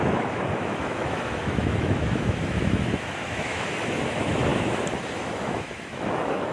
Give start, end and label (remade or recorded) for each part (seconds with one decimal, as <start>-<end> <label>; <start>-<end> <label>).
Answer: 0.0-4.5 remade; 4.5-5.1 recorded; 5.1-6.5 remade